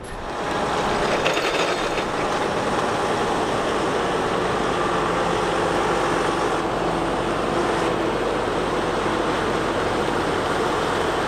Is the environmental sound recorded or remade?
recorded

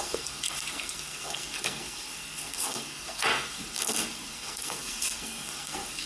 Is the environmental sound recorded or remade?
remade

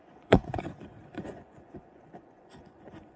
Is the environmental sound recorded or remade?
remade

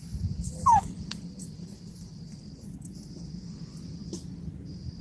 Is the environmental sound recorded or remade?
recorded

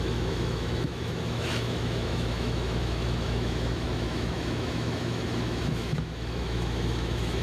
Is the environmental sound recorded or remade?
remade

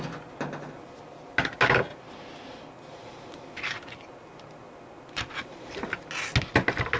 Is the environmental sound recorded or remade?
recorded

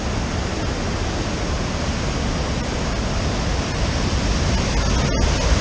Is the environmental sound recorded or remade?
recorded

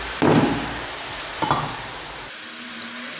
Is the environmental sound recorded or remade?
recorded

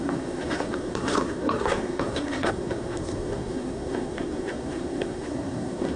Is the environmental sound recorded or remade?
remade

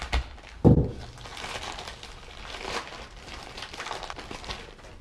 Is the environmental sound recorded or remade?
recorded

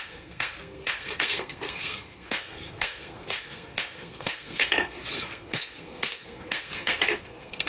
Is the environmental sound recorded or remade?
remade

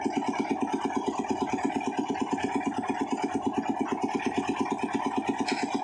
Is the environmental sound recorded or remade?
recorded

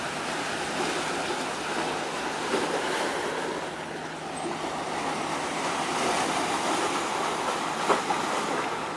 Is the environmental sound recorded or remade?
recorded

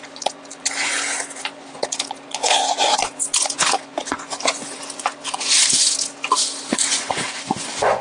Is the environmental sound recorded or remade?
remade